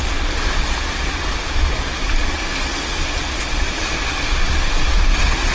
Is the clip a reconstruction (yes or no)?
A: no